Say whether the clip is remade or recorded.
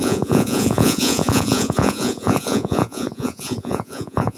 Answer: remade